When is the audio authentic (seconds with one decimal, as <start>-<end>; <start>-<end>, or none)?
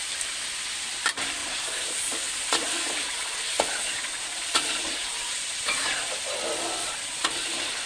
0.0-1.4; 6.1-6.8; 7.3-7.9